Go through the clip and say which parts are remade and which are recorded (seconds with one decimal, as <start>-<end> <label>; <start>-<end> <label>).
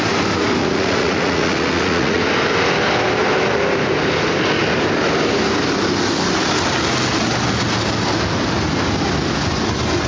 0.0-0.6 recorded; 0.6-2.2 remade; 2.2-10.1 recorded